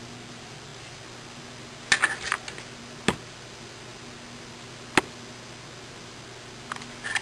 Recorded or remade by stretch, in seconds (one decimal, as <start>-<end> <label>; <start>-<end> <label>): 0.0-7.2 recorded